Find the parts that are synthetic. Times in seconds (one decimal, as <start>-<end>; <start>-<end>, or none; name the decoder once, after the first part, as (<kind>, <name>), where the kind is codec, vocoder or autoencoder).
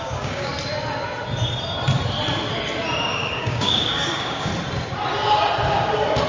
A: 0.0-0.5 (codec, DAC); 3.0-4.5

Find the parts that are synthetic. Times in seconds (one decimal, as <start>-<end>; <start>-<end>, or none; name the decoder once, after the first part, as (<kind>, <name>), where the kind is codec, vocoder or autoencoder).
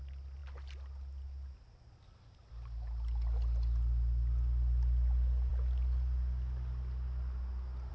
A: none